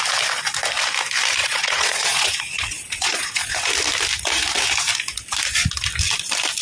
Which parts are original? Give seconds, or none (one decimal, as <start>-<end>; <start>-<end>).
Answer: 0.0-1.4; 3.7-6.6